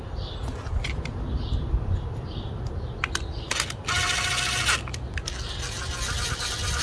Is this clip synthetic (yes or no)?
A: no